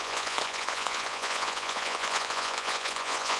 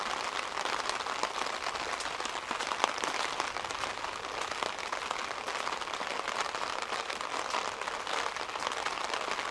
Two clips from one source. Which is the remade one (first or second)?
first